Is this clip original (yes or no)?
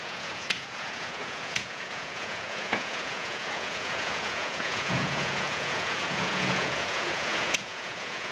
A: no